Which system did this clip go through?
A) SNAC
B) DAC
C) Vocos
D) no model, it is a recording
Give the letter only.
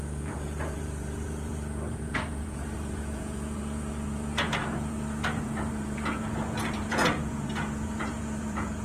C